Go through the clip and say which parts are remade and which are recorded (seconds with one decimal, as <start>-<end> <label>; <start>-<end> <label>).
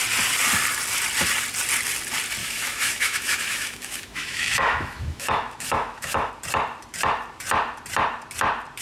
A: 0.0-2.4 recorded; 2.4-6.3 remade; 6.3-8.8 recorded